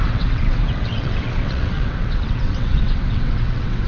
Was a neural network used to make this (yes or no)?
yes